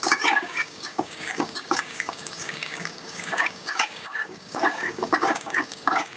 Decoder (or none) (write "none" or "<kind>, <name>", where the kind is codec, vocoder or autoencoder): codec, DAC